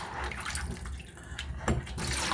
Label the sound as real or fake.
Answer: real